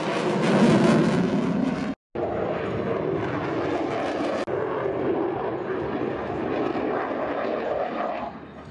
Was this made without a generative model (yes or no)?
yes